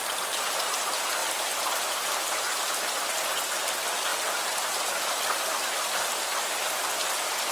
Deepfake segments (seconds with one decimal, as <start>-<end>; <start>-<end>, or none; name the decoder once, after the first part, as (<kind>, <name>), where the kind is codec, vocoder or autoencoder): none